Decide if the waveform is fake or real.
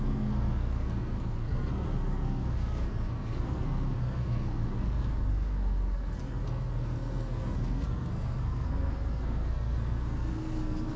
fake